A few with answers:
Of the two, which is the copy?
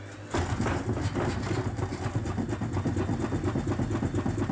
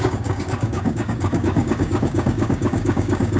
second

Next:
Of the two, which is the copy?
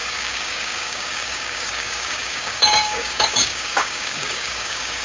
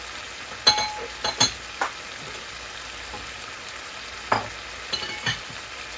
first